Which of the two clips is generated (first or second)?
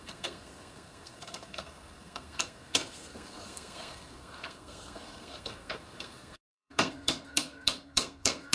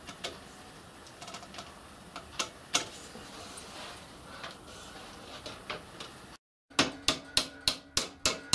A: first